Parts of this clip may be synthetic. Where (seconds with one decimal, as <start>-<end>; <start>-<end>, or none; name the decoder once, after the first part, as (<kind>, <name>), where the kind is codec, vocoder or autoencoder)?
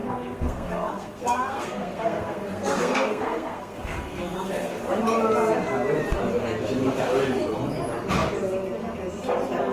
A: 0.0-4.8 (codec, SNAC)